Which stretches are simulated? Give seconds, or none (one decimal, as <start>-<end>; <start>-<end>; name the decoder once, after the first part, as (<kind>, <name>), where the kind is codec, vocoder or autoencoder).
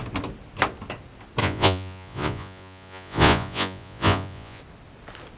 1.4-4.6 (vocoder, Vocos)